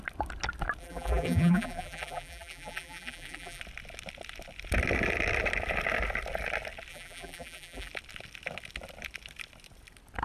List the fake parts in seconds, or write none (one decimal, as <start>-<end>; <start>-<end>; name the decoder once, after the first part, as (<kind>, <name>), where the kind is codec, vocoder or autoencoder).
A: 0.8-3.6 (vocoder, BigVGAN v2); 6.9-7.9